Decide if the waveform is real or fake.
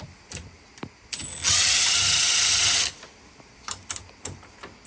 real